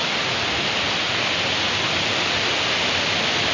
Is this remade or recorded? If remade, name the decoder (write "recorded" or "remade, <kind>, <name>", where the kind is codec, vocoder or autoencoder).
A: recorded